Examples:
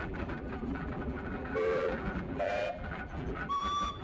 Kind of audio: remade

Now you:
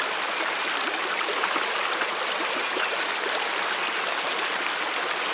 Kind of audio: recorded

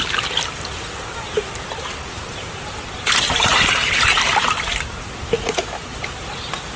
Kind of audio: remade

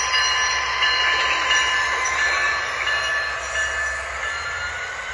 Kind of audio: recorded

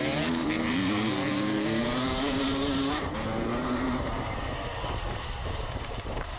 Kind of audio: remade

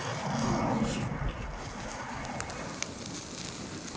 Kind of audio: remade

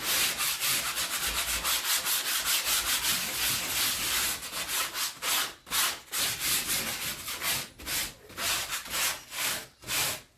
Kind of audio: recorded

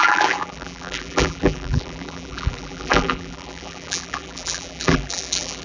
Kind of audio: remade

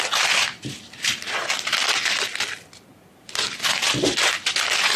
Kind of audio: recorded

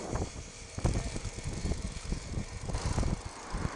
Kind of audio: remade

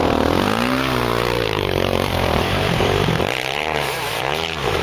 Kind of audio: remade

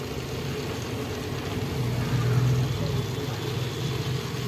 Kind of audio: recorded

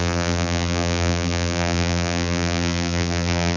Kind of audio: remade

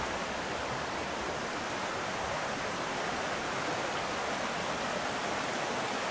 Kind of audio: recorded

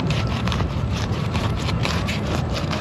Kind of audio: remade